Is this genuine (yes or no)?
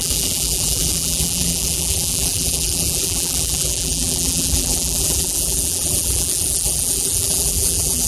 no